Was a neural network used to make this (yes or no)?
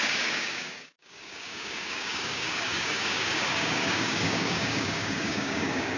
yes